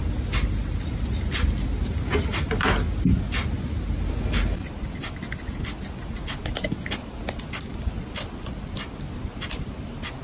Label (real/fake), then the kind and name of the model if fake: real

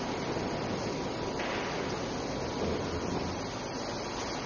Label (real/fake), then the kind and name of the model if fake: real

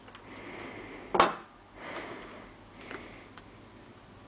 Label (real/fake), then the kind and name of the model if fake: real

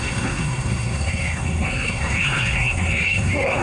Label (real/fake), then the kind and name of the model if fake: fake, codec, SNAC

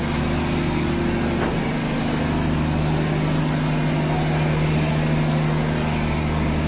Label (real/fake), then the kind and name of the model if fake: real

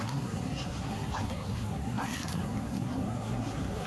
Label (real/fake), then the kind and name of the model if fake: fake, codec, SNAC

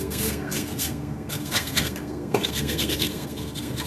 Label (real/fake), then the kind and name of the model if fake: fake, codec, SNAC